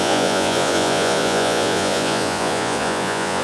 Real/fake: fake